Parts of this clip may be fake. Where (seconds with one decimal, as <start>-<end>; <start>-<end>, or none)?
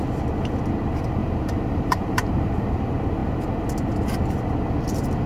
1.2-2.8